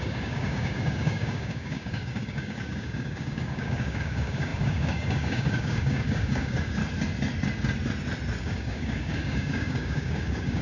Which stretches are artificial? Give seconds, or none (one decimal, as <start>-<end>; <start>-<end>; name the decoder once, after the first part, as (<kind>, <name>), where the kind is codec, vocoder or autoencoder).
0.0-6.8 (codec, DAC); 8.4-10.6